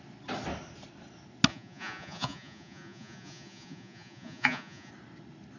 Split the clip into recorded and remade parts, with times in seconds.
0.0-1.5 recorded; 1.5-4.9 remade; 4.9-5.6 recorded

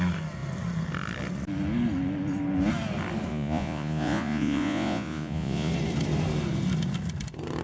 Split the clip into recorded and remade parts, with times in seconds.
0.0-3.3 recorded; 3.3-5.7 remade; 5.7-7.6 recorded

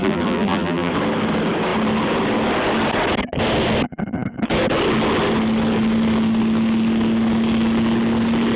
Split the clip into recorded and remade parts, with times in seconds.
0.0-0.9 remade; 0.9-8.6 recorded

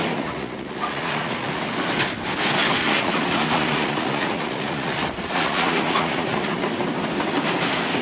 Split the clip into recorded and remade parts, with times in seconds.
0.0-1.6 remade; 1.6-2.8 recorded; 2.8-6.6 remade; 6.6-8.0 recorded